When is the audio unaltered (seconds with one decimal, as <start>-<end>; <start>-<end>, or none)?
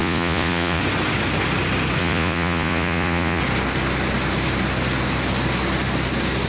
0.8-2.0; 3.4-6.5